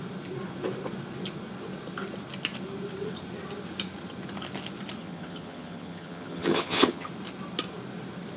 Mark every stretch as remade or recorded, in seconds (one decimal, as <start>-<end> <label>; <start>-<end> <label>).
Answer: 0.0-5.0 recorded; 5.0-7.1 remade; 7.1-8.4 recorded